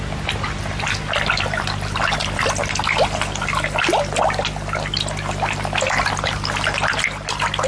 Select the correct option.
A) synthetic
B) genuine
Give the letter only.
B